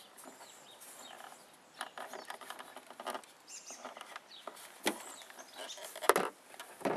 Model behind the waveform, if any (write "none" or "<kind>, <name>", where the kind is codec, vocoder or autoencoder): none